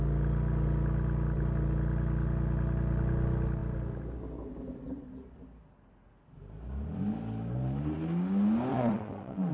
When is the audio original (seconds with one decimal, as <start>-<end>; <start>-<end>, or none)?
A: 0.0-8.7